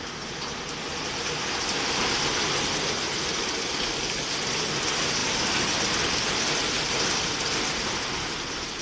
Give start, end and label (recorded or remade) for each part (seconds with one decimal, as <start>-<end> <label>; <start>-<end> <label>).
0.0-8.8 recorded